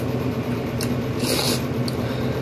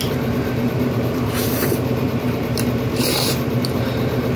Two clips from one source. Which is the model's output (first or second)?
second